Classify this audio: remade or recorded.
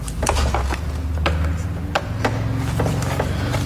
recorded